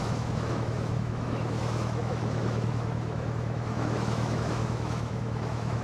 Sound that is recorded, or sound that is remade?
remade